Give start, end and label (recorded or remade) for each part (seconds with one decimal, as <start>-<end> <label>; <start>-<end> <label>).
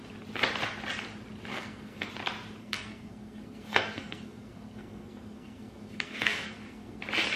0.0-1.5 recorded; 1.5-2.1 remade; 2.1-2.6 recorded; 2.6-7.0 remade; 7.0-7.4 recorded